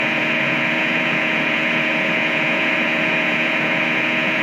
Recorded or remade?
remade